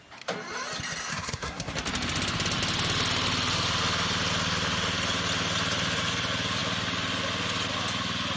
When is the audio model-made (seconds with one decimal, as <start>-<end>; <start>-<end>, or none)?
1.1-1.7